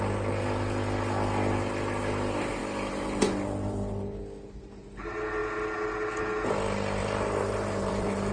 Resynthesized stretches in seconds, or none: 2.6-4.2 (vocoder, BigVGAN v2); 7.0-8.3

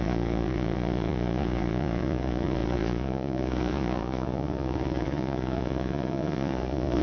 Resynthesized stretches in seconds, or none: 0.0-7.0 (vocoder, Vocos)

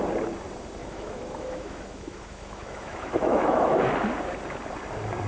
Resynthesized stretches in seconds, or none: 0.8-3.9 (autoencoder, DAC-VAE)

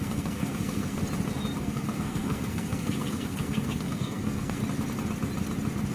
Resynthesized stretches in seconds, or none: 0.0-1.0 (codec, SNAC); 1.6-4.6

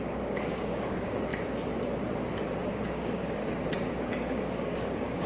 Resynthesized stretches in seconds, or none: 0.0-1.3 (codec, DAC); 2.7-3.4; 3.9-5.3

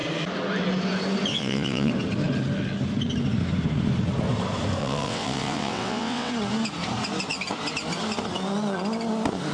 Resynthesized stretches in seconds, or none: 1.3-1.9 (vocoder, WaveNeXt); 4.8-6.3